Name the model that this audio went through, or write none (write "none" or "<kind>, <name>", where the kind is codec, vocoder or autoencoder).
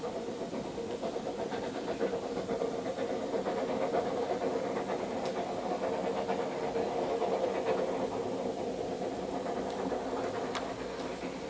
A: none